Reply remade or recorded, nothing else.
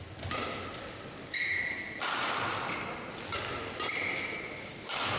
recorded